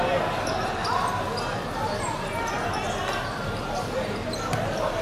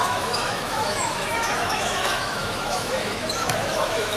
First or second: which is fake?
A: second